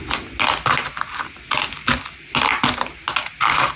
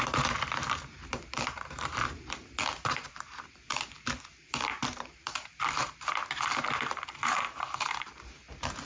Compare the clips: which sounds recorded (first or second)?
first